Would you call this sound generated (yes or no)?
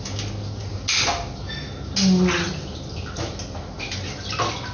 no